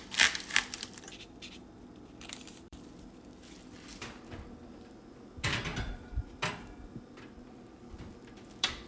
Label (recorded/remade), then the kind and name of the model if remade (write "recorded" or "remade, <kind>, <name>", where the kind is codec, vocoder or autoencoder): remade, vocoder, BigVGAN v2